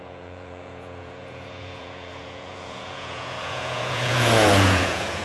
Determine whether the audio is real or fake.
fake